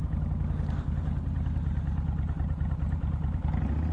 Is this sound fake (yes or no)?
no